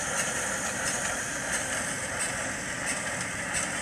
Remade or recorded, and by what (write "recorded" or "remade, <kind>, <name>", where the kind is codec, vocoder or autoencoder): remade, vocoder, BigVGAN v2